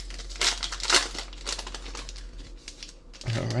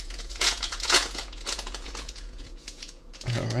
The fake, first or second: second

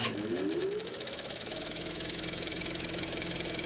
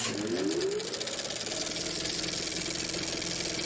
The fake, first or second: first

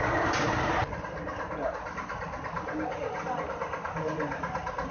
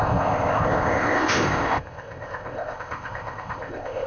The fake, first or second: second